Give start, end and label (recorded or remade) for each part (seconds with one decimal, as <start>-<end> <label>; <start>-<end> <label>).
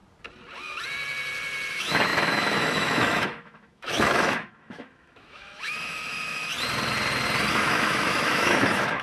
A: 0.0-1.7 recorded; 1.7-6.5 remade; 6.5-7.5 recorded; 7.5-9.0 remade